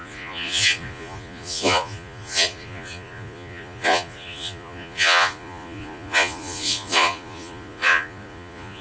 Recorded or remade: remade